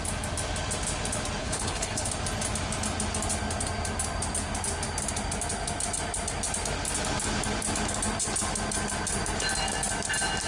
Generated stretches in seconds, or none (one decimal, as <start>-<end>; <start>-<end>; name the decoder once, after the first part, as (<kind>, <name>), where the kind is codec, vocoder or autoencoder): 1.4-2.1 (codec, HILCodec)